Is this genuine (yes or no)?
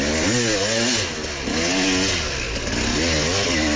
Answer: yes